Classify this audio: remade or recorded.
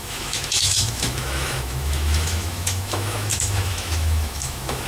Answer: remade